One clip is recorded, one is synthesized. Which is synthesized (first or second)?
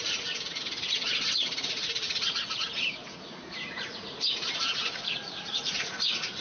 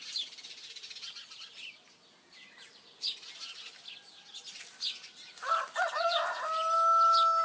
first